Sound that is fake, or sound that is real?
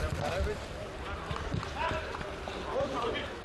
real